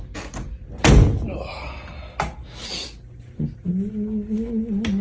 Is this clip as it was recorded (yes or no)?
yes